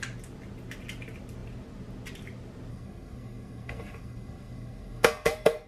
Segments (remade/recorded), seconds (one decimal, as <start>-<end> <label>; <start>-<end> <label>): 0.0-2.7 recorded; 2.7-5.7 remade